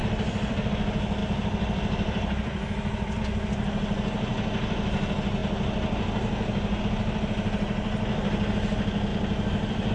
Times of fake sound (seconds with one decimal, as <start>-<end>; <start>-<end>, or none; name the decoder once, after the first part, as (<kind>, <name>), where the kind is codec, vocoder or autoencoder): 0.0-0.7 (vocoder, BigVGAN v2); 1.2-3.2; 9.1-9.9